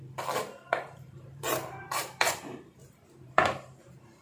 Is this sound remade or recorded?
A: remade